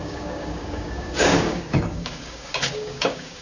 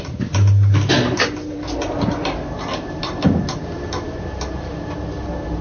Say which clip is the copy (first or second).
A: first